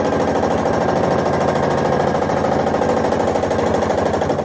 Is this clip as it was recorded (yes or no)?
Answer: yes